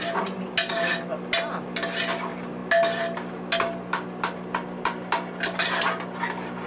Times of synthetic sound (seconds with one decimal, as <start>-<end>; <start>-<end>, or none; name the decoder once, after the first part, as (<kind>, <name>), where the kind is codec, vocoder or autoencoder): none